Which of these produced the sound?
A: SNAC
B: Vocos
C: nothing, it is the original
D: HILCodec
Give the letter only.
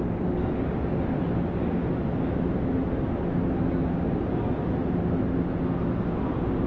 C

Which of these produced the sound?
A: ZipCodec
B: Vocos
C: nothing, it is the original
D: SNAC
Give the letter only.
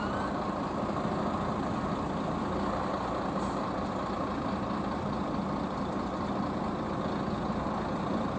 C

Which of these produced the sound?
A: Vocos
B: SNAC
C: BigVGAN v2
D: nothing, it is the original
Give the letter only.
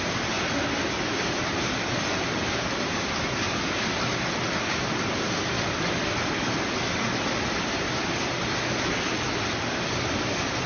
D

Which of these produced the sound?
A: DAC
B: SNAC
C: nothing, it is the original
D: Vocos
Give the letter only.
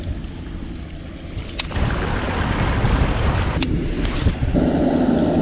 C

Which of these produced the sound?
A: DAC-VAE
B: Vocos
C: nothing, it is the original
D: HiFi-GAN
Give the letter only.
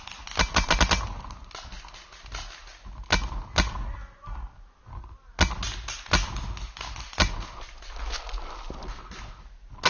C